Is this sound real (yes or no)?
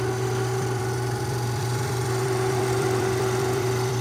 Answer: no